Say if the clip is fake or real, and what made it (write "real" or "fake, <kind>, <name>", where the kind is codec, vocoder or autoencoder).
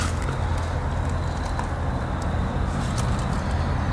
real